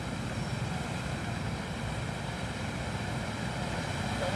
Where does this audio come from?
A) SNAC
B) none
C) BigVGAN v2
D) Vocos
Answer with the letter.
B